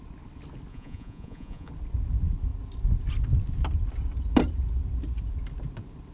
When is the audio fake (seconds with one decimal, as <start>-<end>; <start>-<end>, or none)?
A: 0.7-1.7